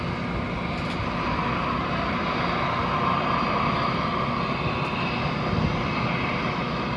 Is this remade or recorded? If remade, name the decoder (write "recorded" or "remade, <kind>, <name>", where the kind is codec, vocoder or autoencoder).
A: recorded